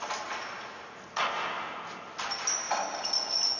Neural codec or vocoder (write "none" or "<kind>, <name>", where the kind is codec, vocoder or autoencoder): none